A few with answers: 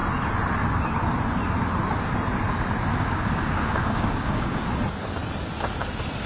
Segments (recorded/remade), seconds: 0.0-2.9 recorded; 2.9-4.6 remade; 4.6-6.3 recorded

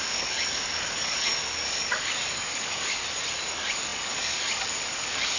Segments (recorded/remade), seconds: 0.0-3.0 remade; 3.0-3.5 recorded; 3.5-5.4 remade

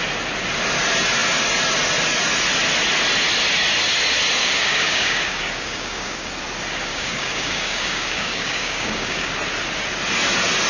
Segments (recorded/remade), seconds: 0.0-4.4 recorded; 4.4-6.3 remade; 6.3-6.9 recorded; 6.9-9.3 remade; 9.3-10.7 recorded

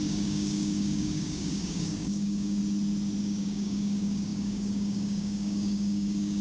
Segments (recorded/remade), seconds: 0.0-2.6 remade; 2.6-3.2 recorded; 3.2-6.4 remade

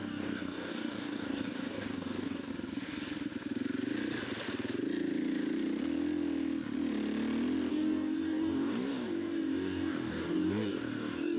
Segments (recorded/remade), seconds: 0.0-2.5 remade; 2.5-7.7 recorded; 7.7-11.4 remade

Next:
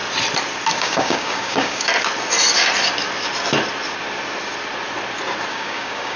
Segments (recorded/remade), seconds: 0.0-0.7 recorded; 0.7-1.9 remade; 1.9-5.5 recorded; 5.5-6.2 remade

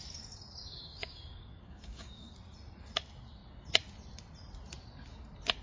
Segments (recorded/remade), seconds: 0.0-0.6 recorded; 0.6-2.3 remade; 2.3-5.6 recorded

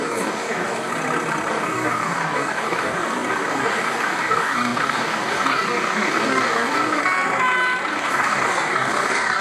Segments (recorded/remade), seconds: 0.0-0.9 remade; 0.9-1.5 recorded; 1.5-7.0 remade; 7.0-7.9 recorded; 7.9-9.4 remade